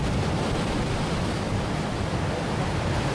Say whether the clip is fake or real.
real